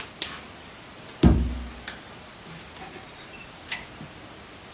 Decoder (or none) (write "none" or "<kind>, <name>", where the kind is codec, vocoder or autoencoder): none